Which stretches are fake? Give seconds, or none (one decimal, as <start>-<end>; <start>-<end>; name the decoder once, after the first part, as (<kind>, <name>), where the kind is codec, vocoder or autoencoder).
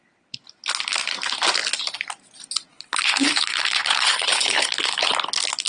2.7-5.1 (codec, HILCodec)